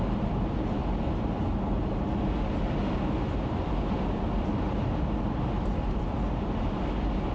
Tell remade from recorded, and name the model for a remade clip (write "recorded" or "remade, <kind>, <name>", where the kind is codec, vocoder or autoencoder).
recorded